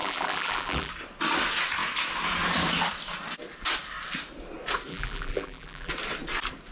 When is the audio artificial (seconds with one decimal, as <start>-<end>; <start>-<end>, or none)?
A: 0.0-0.9; 4.9-5.9